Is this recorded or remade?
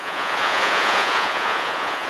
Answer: remade